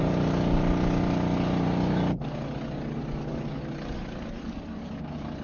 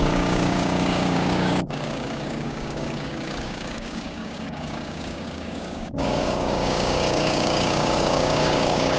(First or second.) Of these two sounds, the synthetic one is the second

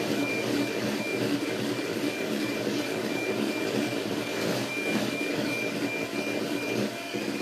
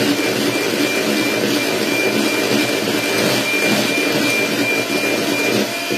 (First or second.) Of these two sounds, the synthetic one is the first